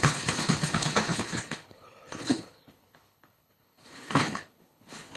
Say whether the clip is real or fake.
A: fake